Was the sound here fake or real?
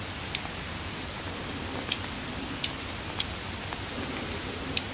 real